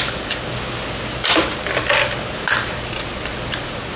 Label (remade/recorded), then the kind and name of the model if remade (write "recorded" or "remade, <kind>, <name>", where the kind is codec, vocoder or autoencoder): recorded